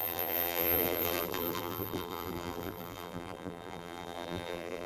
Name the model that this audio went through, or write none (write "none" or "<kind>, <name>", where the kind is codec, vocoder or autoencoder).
vocoder, BigVGAN v2